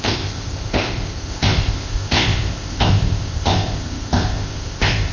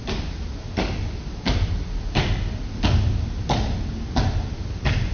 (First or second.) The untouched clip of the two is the second